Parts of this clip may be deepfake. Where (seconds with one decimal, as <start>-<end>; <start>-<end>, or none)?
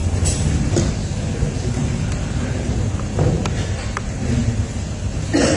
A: none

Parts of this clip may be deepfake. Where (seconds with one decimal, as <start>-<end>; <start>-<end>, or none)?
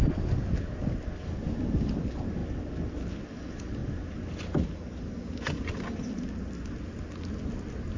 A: none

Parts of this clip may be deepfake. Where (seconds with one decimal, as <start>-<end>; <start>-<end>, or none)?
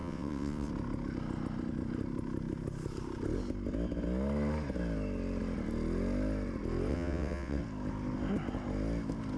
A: 0.0-0.7; 6.9-7.6